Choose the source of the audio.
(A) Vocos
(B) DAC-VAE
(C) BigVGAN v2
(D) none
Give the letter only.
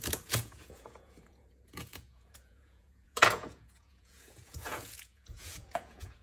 A